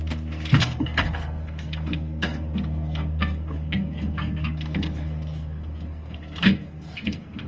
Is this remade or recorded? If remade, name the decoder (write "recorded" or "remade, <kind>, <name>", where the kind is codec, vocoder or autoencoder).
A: remade, codec, SNAC